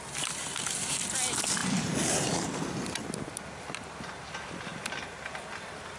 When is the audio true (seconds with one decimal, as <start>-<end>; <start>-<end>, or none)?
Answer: 0.0-6.0